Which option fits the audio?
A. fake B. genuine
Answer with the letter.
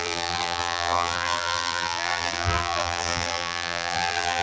A